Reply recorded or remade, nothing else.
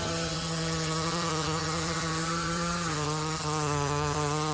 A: remade